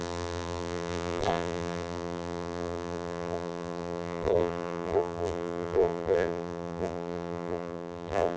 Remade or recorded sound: remade